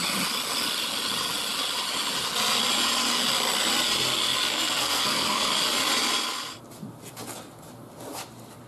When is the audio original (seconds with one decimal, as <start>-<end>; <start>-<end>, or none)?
0.0-4.5; 5.5-8.7